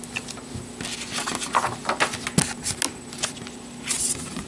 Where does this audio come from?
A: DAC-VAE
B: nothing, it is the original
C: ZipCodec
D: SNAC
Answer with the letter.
B